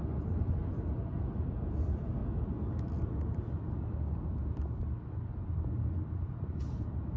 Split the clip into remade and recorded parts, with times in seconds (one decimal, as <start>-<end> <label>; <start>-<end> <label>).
0.0-7.2 recorded